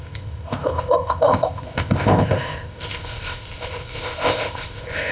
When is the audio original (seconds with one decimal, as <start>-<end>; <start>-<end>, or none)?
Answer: none